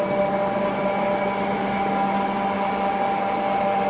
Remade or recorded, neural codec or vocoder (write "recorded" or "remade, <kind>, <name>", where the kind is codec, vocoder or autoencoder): recorded